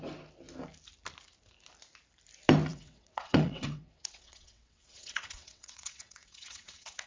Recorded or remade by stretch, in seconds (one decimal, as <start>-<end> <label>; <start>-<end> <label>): 0.0-2.7 recorded; 2.7-7.1 remade